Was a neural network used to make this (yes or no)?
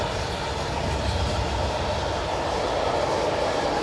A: no